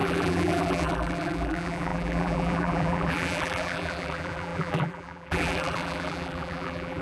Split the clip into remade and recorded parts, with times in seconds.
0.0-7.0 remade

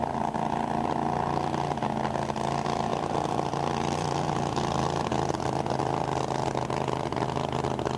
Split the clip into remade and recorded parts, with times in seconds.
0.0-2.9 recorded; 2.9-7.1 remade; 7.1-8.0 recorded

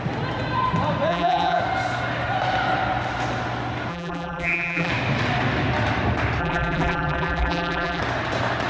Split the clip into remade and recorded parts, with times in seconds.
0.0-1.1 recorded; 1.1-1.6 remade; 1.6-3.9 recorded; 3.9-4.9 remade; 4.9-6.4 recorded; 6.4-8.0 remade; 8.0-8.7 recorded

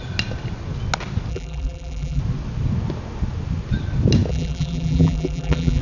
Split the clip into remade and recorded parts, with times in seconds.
0.0-1.3 recorded; 1.3-2.2 remade; 2.2-4.3 recorded; 4.3-5.8 remade

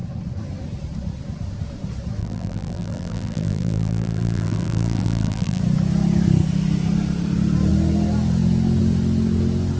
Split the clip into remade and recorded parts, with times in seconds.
0.0-2.2 recorded; 2.2-5.6 remade; 5.6-9.8 recorded

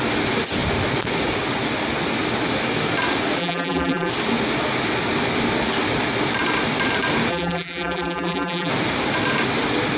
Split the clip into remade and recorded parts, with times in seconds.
0.0-3.4 recorded; 3.4-4.1 remade; 4.1-7.3 recorded; 7.3-8.7 remade; 8.7-10.0 recorded

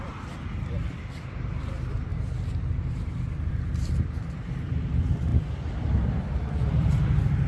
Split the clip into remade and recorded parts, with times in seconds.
0.0-2.1 remade; 2.1-2.9 recorded; 2.9-7.5 remade